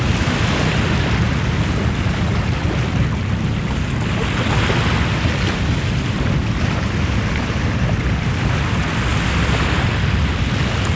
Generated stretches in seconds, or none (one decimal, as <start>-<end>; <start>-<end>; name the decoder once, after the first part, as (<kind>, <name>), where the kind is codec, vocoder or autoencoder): none

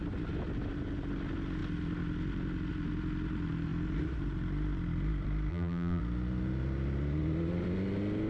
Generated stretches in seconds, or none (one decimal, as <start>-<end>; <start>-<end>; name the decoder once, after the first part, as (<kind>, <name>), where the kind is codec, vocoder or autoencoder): 5.5-6.0 (vocoder, BigVGAN v2)

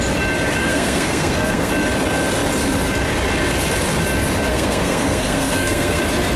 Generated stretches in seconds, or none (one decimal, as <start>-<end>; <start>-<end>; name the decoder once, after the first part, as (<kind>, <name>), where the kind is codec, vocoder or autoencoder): 0.6-1.7 (codec, SNAC); 4.5-6.0

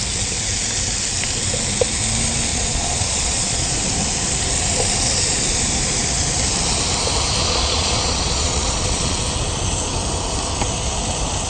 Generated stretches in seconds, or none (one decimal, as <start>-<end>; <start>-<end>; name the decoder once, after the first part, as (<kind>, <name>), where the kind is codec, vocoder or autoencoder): 2.5-3.7 (vocoder, Vocos); 7.4-9.2

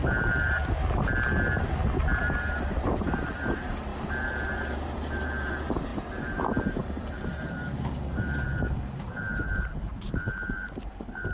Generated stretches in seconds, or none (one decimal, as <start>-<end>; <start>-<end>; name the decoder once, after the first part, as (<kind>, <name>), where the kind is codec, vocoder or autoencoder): 0.0-0.6 (vocoder, BigVGAN v2); 2.2-11.3

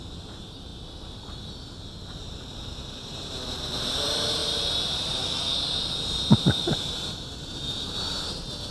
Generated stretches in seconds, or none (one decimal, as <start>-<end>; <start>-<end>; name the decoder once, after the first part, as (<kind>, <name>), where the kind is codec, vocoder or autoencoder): 0.0-8.7 (vocoder, BigVGAN v2)

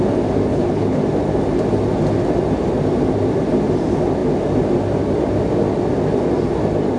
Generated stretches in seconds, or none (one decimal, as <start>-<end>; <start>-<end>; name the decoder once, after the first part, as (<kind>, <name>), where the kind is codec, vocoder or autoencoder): 0.5-1.0 (codec, HILCodec)

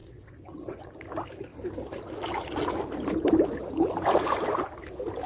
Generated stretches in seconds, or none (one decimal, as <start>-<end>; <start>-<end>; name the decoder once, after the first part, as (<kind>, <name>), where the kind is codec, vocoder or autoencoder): 0.0-0.9 (vocoder, WaveNeXt)